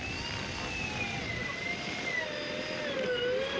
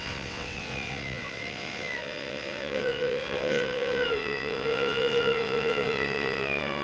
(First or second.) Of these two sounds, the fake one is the second